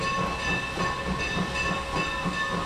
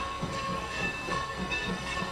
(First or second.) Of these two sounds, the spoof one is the second